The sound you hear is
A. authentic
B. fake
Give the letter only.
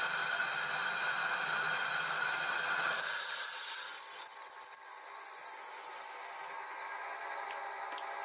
A